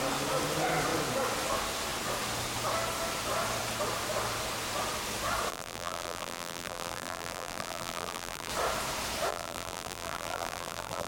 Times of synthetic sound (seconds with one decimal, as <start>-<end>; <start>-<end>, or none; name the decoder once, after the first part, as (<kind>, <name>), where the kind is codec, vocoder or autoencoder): 5.5-8.5 (vocoder, BigVGAN v2); 9.3-11.1